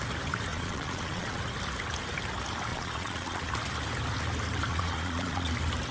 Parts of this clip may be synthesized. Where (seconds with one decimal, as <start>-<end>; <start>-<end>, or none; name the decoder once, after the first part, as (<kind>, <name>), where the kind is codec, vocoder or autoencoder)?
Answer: 0.5-1.4 (vocoder, Vocos); 2.7-3.5; 4.7-5.5